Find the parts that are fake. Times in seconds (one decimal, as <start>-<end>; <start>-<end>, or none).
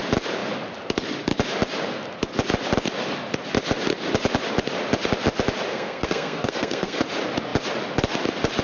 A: 5.7-7.0